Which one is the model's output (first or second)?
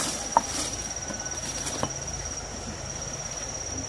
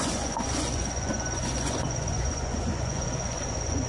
second